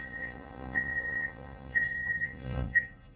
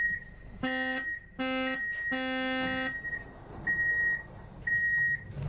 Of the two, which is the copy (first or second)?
first